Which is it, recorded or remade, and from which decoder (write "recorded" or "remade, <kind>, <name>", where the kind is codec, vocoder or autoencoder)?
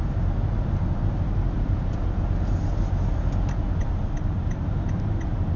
recorded